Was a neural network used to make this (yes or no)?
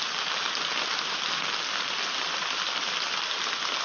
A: no